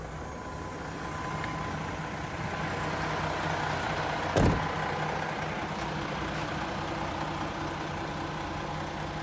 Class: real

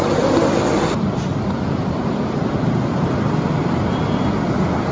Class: real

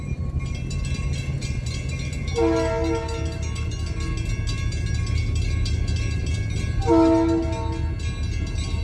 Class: real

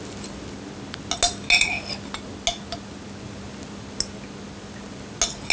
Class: real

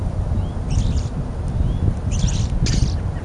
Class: real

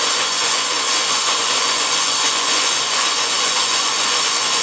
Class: fake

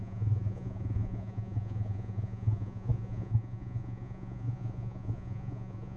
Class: fake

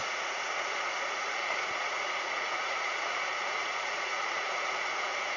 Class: fake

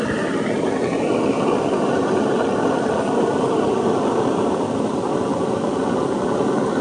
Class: real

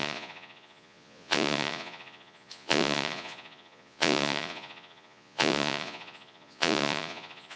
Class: fake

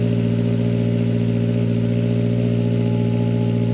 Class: real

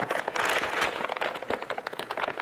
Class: fake